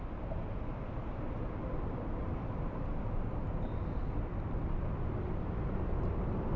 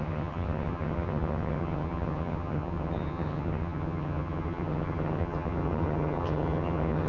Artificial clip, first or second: second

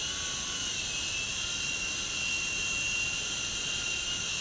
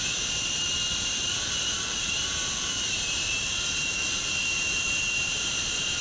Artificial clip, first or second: second